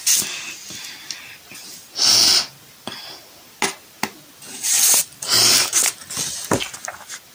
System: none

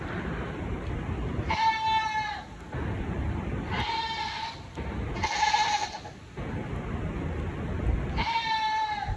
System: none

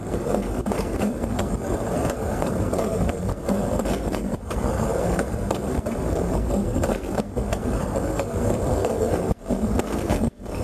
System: codec, SNAC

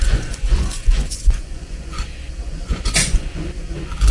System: vocoder, Vocos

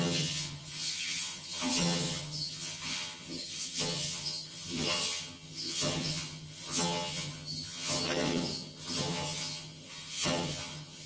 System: vocoder, HiFi-GAN